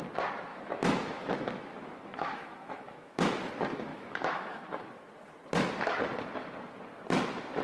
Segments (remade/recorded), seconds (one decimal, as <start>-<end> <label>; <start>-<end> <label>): 0.0-0.5 recorded; 0.5-3.5 remade; 3.5-3.9 recorded; 3.9-4.9 remade; 4.9-7.6 recorded